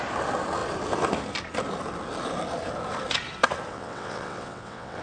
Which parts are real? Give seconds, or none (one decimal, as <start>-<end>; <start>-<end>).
0.0-3.7